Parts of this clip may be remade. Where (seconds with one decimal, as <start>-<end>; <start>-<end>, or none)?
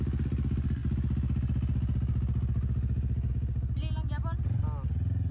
none